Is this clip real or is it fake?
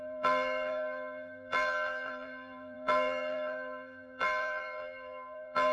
fake